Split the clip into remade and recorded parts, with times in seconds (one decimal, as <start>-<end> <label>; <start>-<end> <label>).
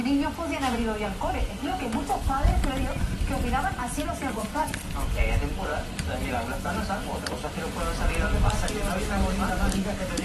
0.0-1.3 recorded; 1.3-2.5 remade; 2.5-4.3 recorded; 4.3-5.7 remade; 5.7-6.3 recorded; 6.3-7.1 remade; 7.1-9.5 recorded; 9.5-10.2 remade